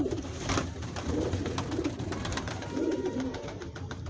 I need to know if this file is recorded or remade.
remade